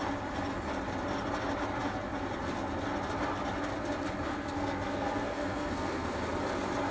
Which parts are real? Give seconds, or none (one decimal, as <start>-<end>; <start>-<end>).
0.0-4.3; 6.2-6.9